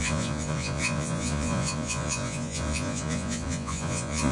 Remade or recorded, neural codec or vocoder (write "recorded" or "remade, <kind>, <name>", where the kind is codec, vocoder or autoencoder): remade, vocoder, Vocos